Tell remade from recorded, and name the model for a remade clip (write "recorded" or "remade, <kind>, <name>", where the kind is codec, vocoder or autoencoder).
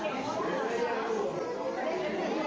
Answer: recorded